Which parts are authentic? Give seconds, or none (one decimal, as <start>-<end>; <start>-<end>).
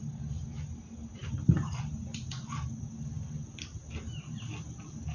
0.0-1.2; 2.8-3.8; 4.5-5.1